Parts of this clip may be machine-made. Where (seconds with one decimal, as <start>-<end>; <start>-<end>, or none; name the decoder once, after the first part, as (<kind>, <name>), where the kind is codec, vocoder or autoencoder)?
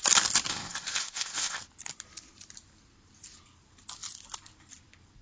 0.5-1.6 (codec, ZipCodec)